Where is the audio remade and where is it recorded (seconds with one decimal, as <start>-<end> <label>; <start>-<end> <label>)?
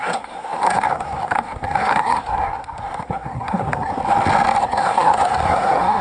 0.0-4.0 remade; 4.0-4.6 recorded; 4.6-6.0 remade